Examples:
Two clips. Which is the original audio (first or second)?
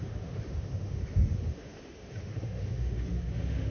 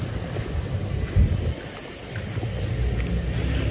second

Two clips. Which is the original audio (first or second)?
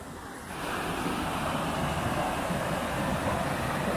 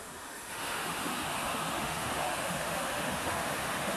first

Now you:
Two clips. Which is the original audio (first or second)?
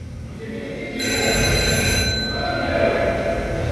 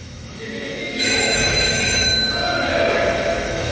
first